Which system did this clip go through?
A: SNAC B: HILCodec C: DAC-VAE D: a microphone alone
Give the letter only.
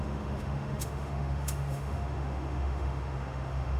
C